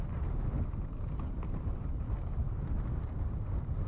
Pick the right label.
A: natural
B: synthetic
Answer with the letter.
A